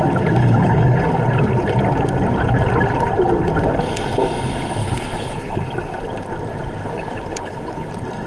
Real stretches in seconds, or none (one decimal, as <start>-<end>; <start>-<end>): 0.0-0.4; 1.0-4.8; 5.6-6.8; 7.9-8.3